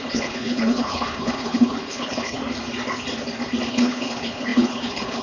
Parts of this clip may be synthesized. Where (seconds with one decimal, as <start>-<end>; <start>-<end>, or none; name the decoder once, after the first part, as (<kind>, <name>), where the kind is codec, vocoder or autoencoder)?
0.0-2.4 (codec, HILCodec); 3.7-5.2